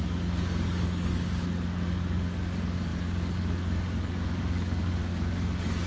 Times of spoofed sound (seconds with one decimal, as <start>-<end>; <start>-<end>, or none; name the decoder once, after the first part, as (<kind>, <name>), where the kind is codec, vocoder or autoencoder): 0.0-5.9 (codec, DAC)